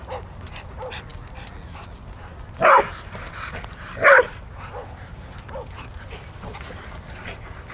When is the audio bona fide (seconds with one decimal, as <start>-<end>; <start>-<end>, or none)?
0.0-7.7